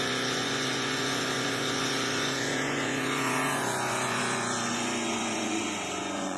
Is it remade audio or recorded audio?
remade